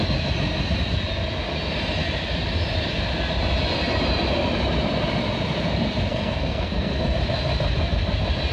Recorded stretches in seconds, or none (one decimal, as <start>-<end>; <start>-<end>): 0.0-6.1; 7.2-8.5